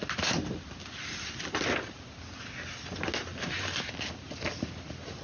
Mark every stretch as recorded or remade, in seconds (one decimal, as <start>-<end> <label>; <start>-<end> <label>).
0.0-3.3 recorded; 3.3-3.9 remade; 3.9-5.2 recorded